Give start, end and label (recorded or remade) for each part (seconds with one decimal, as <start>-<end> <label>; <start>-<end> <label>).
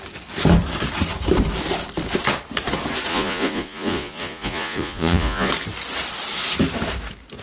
0.0-3.1 recorded; 3.1-5.5 remade; 5.5-7.4 recorded